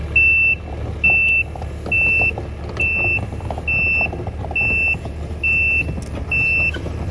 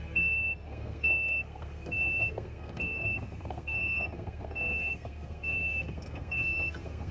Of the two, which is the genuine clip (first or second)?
first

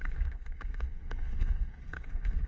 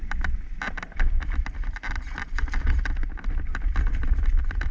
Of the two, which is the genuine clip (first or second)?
second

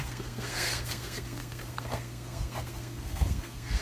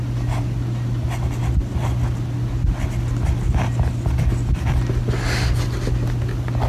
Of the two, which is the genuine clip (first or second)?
second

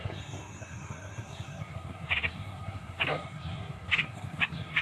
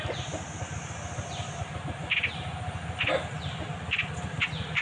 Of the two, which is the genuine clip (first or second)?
second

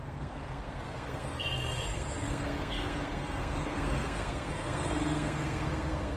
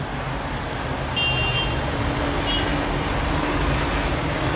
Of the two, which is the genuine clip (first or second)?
second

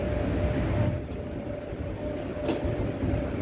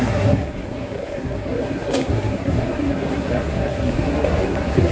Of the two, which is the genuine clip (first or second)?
first